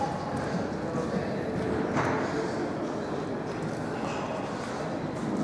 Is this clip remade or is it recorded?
recorded